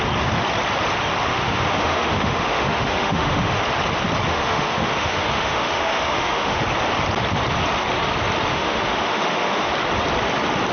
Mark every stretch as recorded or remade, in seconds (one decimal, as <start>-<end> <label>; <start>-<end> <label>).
0.0-1.3 recorded; 1.3-3.6 remade; 3.6-4.3 recorded; 4.3-6.6 remade; 6.6-8.5 recorded; 8.5-9.7 remade; 9.7-10.7 recorded